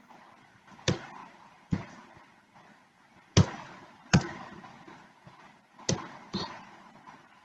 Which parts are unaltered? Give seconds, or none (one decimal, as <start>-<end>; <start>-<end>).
0.0-7.4